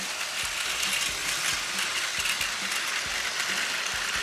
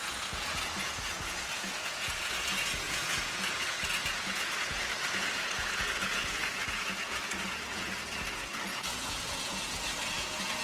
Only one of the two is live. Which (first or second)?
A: first